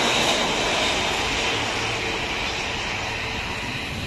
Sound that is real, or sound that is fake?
real